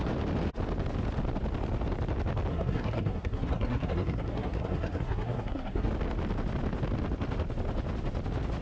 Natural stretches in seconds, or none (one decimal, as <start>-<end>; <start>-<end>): 0.0-2.5; 5.9-8.6